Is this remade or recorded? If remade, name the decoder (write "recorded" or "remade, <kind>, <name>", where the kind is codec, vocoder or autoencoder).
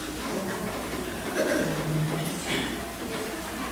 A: remade, vocoder, BigVGAN v2